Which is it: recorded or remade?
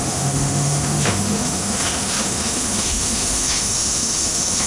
remade